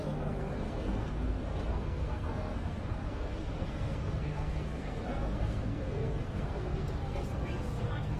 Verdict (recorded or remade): remade